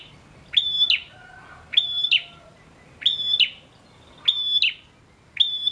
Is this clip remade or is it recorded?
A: recorded